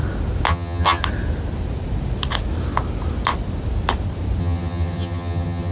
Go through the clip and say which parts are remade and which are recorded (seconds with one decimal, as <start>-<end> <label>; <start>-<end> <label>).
0.0-0.5 recorded; 0.5-1.0 remade; 1.0-4.4 recorded; 4.4-5.7 remade